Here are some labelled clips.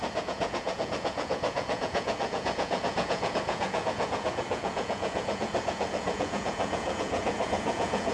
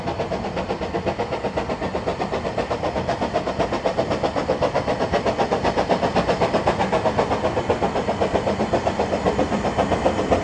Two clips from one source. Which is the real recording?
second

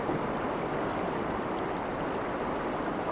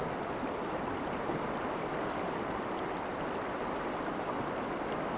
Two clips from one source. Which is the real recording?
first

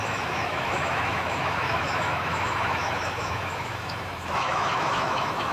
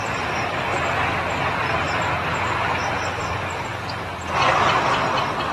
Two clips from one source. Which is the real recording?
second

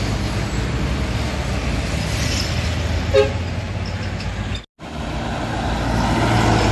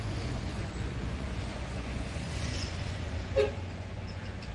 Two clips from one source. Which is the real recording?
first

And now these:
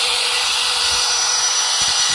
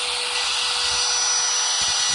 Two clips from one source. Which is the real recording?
second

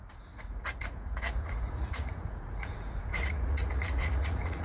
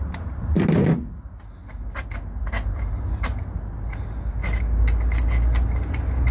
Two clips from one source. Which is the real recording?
second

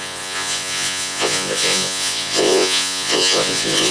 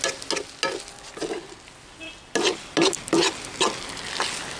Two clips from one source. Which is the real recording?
second